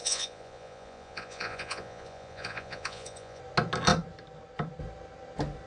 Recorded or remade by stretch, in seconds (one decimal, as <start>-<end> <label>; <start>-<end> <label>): 0.0-3.4 remade; 3.4-5.7 recorded